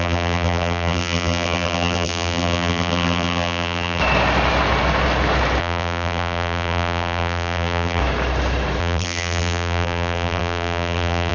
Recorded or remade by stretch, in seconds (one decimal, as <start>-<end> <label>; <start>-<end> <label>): 0.0-4.0 remade; 4.0-5.6 recorded; 5.6-8.0 remade; 8.0-8.8 recorded; 8.8-11.3 remade